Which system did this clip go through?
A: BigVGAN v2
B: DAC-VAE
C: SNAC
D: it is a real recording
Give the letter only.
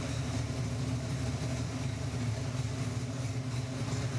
D